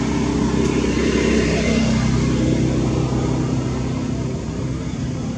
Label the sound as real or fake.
real